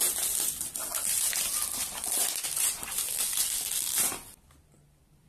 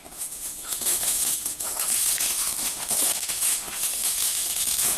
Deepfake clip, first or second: second